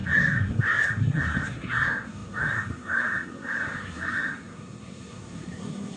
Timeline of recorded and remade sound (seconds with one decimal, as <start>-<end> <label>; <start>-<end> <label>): 0.0-6.0 remade